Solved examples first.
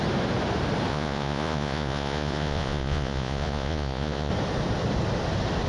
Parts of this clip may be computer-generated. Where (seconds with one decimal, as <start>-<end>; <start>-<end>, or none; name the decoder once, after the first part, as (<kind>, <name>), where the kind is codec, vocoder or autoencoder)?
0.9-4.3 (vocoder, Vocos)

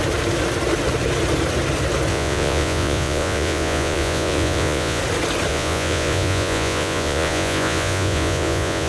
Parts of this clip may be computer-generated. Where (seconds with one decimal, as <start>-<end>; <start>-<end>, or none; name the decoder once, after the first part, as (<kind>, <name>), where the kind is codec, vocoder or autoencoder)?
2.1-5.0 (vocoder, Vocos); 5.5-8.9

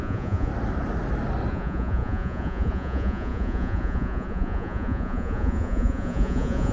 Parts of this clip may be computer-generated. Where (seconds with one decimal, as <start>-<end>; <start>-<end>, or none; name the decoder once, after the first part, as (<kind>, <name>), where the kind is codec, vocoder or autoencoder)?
0.0-0.5 (vocoder, Vocos); 1.5-6.7